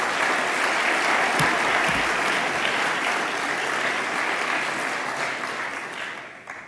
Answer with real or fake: real